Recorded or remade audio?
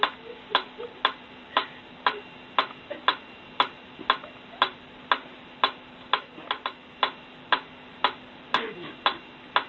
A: recorded